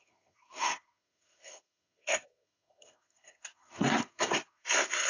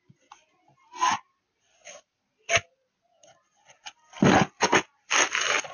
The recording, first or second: second